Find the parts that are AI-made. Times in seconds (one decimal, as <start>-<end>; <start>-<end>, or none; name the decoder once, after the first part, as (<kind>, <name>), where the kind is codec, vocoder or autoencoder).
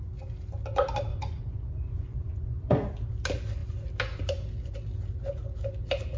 1.1-2.9 (vocoder, Vocos)